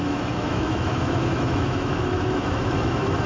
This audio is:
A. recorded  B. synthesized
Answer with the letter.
B